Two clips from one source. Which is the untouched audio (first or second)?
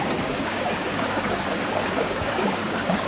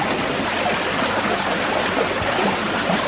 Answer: second